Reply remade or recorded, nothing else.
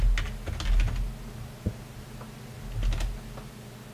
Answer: recorded